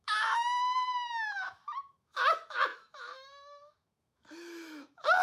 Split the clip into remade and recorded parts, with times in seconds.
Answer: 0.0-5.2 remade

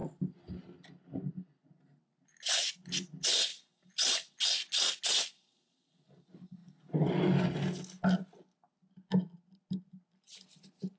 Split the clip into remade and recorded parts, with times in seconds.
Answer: 0.0-11.0 recorded

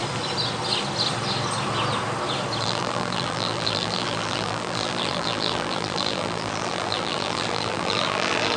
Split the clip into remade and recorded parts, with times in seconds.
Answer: 0.0-2.6 recorded; 2.6-8.6 remade

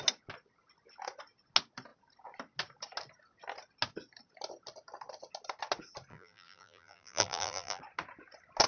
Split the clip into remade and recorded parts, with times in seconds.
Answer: 0.0-6.1 recorded; 6.1-7.8 remade; 7.8-8.7 recorded

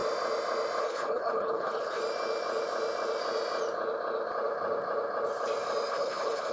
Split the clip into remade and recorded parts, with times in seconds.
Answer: 0.0-0.8 recorded; 0.8-2.0 remade; 2.0-5.9 recorded; 5.9-6.5 remade

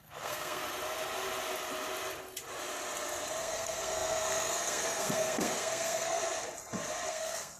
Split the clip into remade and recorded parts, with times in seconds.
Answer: 0.0-0.6 remade; 0.6-3.4 recorded; 3.4-6.2 remade; 6.2-7.1 recorded; 7.1-7.6 remade

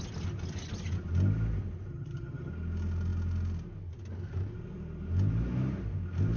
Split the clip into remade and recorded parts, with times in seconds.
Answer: 0.0-1.9 recorded; 1.9-2.5 remade; 2.5-6.4 recorded

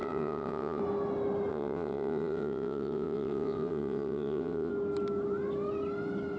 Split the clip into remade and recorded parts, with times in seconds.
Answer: 0.0-0.8 remade; 0.8-1.5 recorded; 1.5-4.7 remade; 4.7-6.4 recorded